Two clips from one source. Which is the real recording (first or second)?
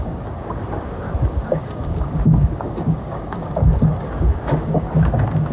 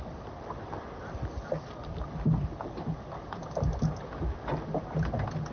second